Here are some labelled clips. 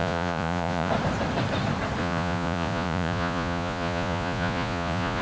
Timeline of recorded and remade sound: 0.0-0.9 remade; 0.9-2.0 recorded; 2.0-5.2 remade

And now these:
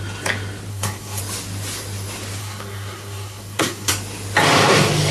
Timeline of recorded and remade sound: 0.0-0.7 recorded; 0.7-1.2 remade; 1.2-2.4 recorded; 2.4-3.9 remade; 3.9-5.1 recorded